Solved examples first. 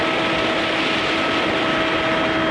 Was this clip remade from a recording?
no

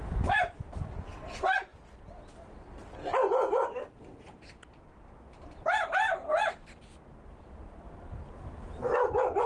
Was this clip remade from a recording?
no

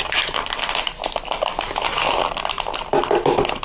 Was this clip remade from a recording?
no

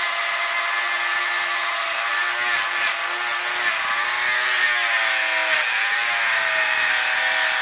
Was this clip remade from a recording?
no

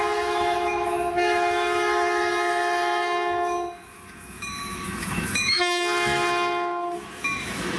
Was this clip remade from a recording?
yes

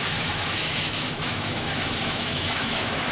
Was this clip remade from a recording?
yes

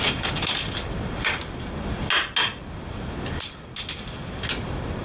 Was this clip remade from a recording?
no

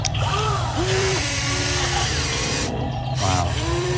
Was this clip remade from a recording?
yes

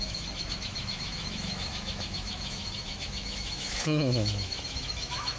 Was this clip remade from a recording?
yes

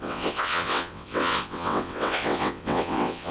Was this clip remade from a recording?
yes